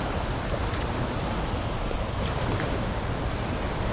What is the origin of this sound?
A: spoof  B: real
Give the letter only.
B